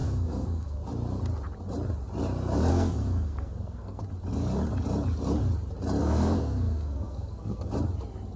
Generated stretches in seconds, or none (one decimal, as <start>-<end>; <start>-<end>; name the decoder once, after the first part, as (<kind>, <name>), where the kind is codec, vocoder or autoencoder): 0.0-0.8 (codec, SNAC); 2.7-4.0; 6.0-7.7